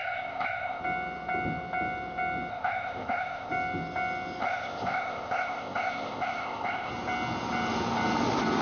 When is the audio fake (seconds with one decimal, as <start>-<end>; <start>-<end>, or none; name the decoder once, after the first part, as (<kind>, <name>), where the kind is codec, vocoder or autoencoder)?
0.0-0.8 (codec, ZipCodec); 2.5-3.5; 4.4-6.9